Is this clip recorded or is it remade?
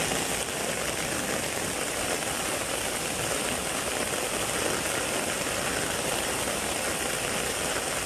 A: recorded